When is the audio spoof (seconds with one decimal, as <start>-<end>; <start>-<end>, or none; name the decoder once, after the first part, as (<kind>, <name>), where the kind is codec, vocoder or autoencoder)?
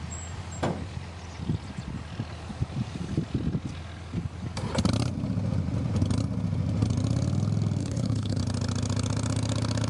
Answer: 7.8-8.4 (codec, HILCodec)